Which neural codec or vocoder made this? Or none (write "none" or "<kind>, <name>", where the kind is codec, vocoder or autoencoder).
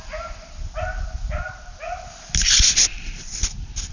none